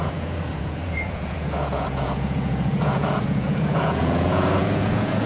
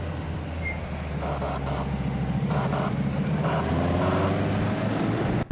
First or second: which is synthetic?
first